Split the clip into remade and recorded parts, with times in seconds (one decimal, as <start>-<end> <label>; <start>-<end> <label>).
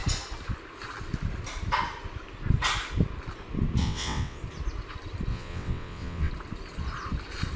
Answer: 0.0-3.8 recorded; 3.8-4.4 remade; 4.4-5.3 recorded; 5.3-6.3 remade; 6.3-7.6 recorded